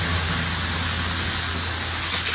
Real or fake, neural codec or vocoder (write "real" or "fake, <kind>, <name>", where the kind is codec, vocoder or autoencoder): real